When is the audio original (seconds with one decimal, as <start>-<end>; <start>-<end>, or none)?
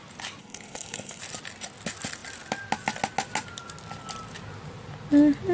0.0-0.4; 1.2-5.5